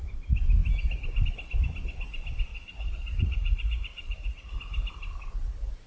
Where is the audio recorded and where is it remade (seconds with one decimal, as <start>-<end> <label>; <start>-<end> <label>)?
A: 0.0-2.5 recorded; 2.5-4.5 remade; 4.5-5.9 recorded